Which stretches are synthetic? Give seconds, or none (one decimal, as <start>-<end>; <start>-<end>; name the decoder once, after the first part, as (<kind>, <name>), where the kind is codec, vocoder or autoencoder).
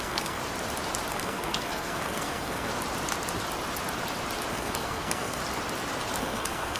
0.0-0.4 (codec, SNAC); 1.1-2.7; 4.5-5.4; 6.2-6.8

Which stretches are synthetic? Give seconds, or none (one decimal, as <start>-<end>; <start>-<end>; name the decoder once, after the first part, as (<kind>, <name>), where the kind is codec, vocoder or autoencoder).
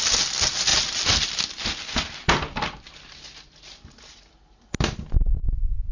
none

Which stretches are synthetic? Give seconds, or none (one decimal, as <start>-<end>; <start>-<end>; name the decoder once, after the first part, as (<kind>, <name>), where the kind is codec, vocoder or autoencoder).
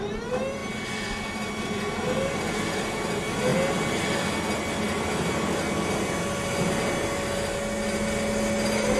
none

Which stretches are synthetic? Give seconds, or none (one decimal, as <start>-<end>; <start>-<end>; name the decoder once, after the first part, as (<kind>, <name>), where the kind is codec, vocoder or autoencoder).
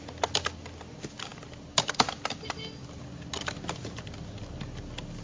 none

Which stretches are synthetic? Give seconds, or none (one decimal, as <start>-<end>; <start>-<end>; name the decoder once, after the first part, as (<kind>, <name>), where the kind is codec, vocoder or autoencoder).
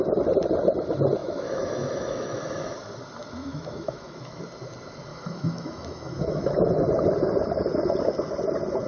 1.2-2.4 (autoencoder, DAC-VAE); 3.4-4.4; 5.1-6.7